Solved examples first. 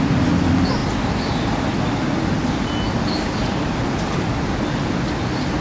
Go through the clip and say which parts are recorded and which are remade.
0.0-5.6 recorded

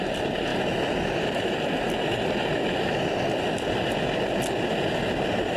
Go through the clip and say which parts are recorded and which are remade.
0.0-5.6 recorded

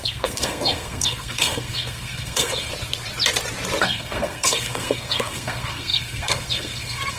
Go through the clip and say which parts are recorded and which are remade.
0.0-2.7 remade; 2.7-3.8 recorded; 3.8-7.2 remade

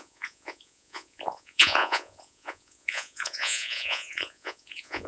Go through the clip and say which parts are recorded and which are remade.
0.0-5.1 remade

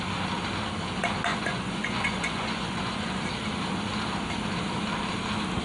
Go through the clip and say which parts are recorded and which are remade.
0.0-1.3 recorded; 1.3-3.2 remade; 3.2-5.6 recorded

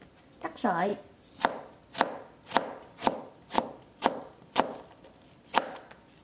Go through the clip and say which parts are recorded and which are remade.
0.0-6.2 recorded